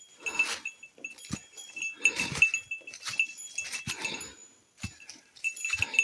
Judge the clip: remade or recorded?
recorded